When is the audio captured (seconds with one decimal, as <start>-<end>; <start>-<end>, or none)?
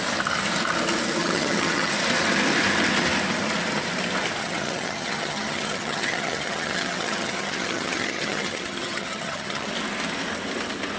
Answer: 0.0-1.2; 1.9-4.4; 9.7-11.0